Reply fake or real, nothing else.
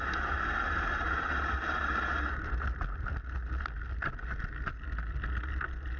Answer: real